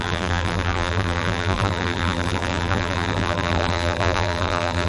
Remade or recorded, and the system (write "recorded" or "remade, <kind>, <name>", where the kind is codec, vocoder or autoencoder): remade, vocoder, BigVGAN v2